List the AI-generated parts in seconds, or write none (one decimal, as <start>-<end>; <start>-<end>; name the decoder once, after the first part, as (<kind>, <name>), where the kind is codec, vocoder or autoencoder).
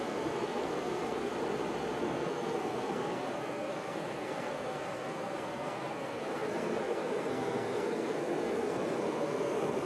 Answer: 0.0-1.3 (codec, SNAC); 2.0-9.9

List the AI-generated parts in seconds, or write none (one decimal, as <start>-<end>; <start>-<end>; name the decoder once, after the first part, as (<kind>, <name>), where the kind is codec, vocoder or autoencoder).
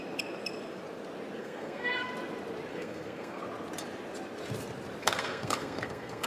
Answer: 1.4-2.1 (codec, SNAC); 2.7-3.4; 5.0-6.3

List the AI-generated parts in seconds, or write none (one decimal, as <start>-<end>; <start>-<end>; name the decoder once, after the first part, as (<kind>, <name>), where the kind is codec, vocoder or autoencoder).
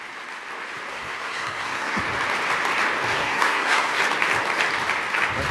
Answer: 0.9-2.0 (codec, SNAC); 3.1-4.0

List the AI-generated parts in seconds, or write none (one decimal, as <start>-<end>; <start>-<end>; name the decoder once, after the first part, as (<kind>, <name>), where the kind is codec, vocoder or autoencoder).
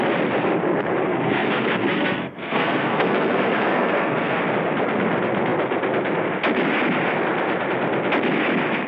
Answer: 1.1-4.4 (codec, SNAC)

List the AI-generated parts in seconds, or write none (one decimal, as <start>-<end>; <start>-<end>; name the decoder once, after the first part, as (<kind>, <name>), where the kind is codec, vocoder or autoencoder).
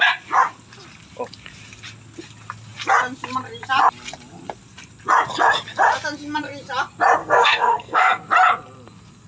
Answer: 7.2-8.2 (codec, SNAC)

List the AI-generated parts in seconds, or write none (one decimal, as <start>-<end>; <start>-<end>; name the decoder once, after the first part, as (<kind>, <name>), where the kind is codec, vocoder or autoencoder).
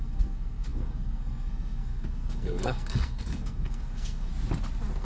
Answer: 0.0-4.3 (codec, SNAC)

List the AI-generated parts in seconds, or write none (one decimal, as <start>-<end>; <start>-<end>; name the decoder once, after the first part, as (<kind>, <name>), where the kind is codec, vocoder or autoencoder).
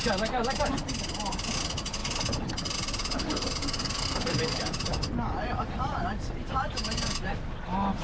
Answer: 3.6-4.3 (codec, SNAC)